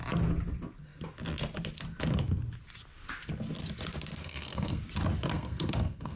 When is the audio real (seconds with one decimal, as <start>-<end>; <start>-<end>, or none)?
0.0-4.2; 4.8-5.3